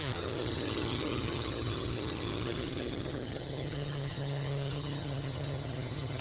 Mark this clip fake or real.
fake